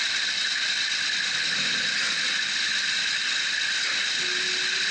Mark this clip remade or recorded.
recorded